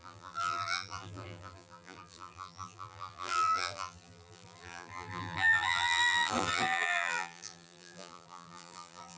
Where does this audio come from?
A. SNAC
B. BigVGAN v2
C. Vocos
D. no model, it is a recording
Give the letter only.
B